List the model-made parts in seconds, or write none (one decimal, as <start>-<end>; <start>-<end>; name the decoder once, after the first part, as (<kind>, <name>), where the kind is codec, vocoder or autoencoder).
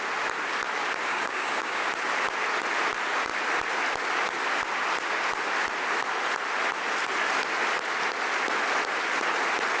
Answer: 1.1-1.9 (codec, DAC)